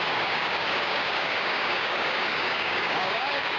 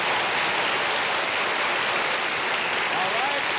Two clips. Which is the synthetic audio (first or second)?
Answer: first